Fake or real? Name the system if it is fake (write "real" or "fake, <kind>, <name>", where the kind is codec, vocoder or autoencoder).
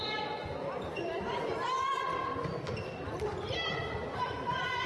real